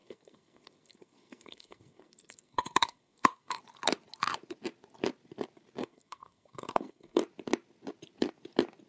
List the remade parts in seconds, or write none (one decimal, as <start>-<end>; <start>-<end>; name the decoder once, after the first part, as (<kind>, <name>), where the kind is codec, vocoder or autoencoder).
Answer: 0.0-3.6 (codec, SNAC); 5.8-7.2